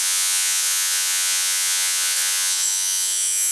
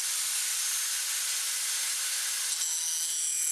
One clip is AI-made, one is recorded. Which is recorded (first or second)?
second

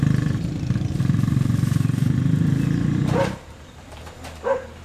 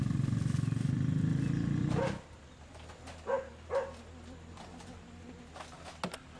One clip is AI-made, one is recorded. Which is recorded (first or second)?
second